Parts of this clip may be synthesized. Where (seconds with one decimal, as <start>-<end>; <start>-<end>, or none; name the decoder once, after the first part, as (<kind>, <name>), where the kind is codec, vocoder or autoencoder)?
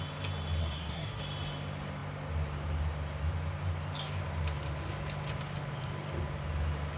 0.6-1.2 (codec, SNAC)